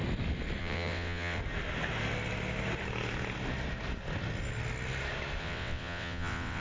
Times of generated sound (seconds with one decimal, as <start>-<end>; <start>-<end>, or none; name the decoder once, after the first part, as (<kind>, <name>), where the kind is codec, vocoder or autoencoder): 0.6-1.4 (vocoder, WaveNeXt); 5.4-6.6